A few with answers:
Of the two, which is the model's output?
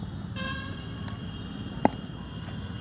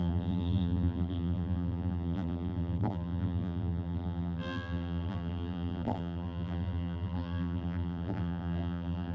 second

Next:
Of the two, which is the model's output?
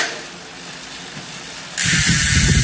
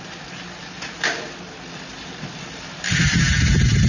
second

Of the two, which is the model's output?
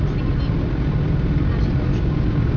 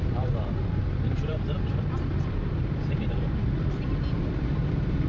second